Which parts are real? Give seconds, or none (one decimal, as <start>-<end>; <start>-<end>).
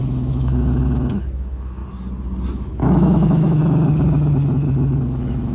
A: 1.8-2.5; 3.6-5.0